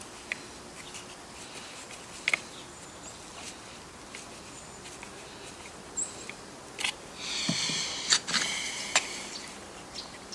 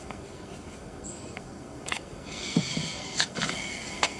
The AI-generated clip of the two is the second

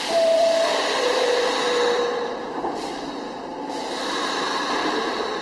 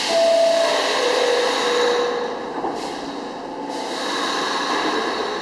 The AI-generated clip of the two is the first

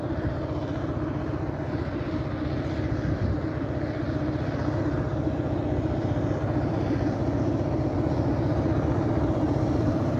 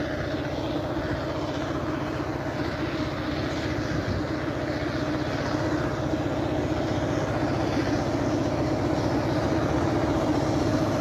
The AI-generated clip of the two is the first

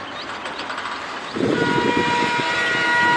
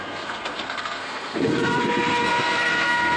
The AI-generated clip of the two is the second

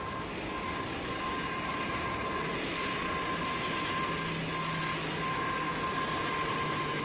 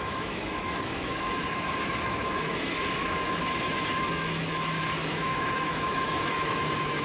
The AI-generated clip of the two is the second